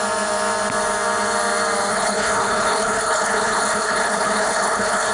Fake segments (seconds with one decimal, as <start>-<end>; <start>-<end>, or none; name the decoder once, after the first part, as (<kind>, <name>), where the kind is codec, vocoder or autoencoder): 1.9-5.1 (codec, HILCodec)